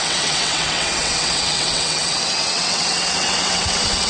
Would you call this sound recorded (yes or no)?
no